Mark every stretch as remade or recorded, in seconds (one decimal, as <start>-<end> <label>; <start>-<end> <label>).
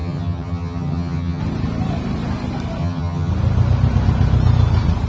0.0-1.4 remade; 1.4-2.8 recorded; 2.8-3.3 remade; 3.3-5.1 recorded